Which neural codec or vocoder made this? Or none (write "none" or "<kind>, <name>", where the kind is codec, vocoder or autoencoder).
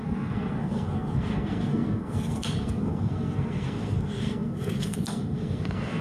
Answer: codec, SNAC